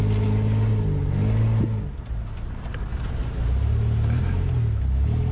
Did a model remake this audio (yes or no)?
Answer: no